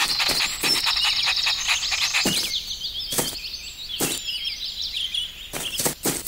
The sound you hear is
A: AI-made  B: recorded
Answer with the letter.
B